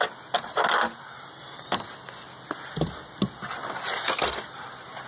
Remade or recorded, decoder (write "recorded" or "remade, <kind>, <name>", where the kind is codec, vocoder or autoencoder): recorded